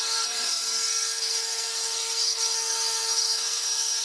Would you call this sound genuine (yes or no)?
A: no